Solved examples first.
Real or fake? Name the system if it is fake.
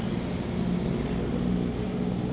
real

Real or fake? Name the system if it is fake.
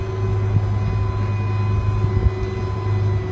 real